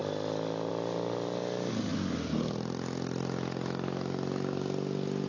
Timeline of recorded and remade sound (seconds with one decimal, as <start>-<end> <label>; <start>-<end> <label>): 0.0-5.3 recorded